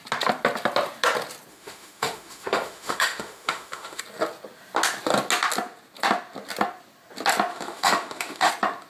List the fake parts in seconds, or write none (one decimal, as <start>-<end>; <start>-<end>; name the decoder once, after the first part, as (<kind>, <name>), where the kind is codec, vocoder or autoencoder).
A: 1.5-4.0 (autoencoder, DAC-VAE); 7.5-8.5